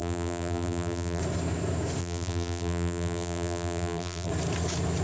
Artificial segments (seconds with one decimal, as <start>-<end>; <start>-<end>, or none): 0.0-1.2; 2.0-4.3